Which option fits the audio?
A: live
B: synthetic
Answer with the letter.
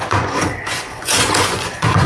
B